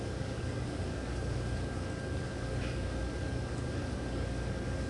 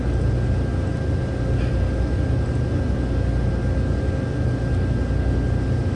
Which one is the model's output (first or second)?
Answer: first